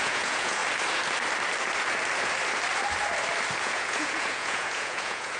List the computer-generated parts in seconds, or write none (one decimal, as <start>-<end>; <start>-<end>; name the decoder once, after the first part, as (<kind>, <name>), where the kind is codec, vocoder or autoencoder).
0.0-0.6 (vocoder, Vocos); 3.6-5.4